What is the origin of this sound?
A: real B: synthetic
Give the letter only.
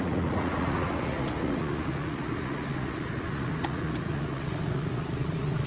B